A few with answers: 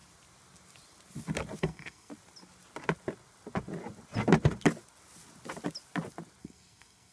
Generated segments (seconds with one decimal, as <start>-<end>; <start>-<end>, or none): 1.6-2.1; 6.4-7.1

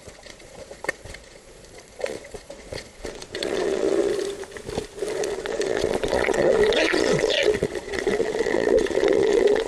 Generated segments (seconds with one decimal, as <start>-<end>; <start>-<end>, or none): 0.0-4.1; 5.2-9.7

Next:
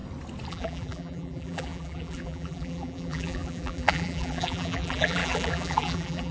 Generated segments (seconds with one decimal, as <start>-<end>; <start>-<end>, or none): 0.5-6.3

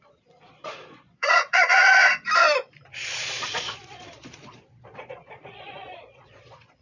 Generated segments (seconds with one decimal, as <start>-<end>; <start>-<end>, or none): 0.0-2.0; 3.1-6.8

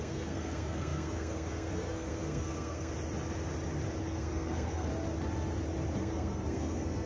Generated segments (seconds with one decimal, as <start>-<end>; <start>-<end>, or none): 0.0-2.9; 4.0-4.9; 6.0-7.1